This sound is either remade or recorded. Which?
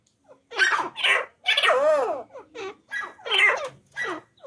recorded